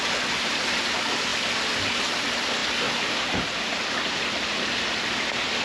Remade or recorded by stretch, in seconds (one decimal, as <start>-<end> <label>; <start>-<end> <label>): 0.0-5.6 recorded